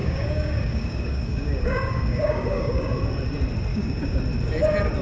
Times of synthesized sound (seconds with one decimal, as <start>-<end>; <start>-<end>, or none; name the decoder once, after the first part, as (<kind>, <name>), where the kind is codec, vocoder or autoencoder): 0.0-3.0 (codec, DAC); 3.7-4.2